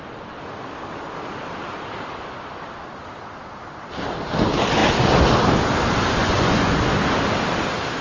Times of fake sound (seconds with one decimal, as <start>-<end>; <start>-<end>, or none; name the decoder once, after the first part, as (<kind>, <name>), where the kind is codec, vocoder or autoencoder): 6.2-6.7 (vocoder, Vocos)